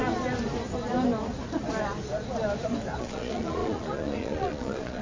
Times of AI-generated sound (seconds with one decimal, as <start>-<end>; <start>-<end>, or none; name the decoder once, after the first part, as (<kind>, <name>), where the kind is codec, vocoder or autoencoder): 3.0-5.0 (vocoder, Vocos)